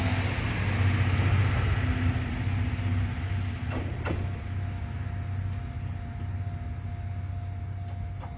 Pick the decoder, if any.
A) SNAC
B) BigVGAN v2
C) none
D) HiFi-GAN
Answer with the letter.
C